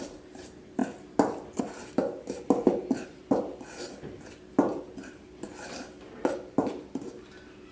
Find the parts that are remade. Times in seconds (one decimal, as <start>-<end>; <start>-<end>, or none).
none